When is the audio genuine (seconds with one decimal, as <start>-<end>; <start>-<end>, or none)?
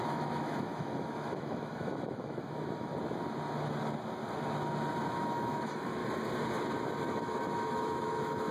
2.9-5.1; 6.0-7.0